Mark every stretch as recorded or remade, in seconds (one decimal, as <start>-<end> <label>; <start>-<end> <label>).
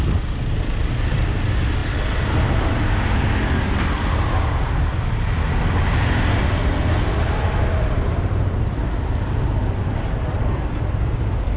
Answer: 0.0-11.6 recorded